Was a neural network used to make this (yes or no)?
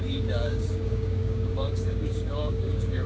yes